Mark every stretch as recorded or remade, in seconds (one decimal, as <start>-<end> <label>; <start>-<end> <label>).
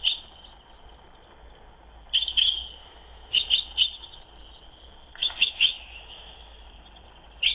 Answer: 0.0-2.8 recorded; 2.8-3.4 remade; 3.4-5.2 recorded; 5.2-6.7 remade; 6.7-7.5 recorded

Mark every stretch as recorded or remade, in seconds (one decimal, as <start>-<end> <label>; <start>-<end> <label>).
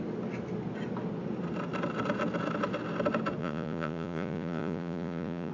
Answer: 0.0-3.4 recorded; 3.4-5.5 remade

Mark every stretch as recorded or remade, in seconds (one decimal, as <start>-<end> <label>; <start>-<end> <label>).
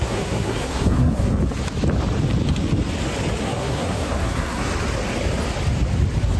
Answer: 0.0-1.3 remade; 1.3-3.4 recorded; 3.4-4.7 remade; 4.7-6.4 recorded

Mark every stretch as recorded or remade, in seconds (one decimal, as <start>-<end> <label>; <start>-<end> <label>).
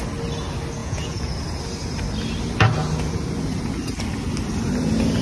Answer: 0.0-0.8 recorded; 0.8-1.3 remade; 1.3-5.2 recorded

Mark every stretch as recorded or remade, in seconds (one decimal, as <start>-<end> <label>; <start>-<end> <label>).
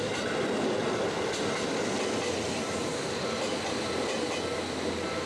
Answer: 0.0-5.3 recorded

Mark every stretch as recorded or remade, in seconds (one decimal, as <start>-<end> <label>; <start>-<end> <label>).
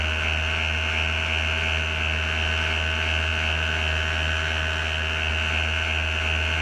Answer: 0.0-6.6 recorded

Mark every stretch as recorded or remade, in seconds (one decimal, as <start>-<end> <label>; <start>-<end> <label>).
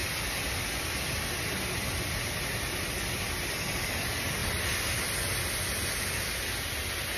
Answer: 0.0-7.2 recorded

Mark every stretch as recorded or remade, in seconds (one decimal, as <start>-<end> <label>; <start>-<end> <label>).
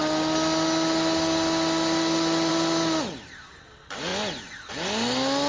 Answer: 0.0-5.5 recorded